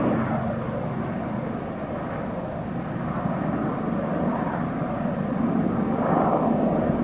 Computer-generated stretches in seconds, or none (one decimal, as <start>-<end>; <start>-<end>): none